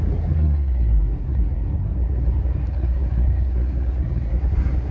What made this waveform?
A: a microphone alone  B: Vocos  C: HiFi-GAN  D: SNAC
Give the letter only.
D